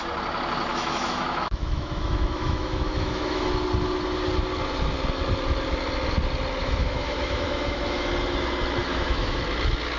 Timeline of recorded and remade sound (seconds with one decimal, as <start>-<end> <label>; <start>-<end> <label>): 0.0-0.7 recorded; 0.7-3.5 remade; 3.5-6.6 recorded; 6.6-8.1 remade; 8.1-8.8 recorded; 8.8-9.4 remade; 9.4-10.0 recorded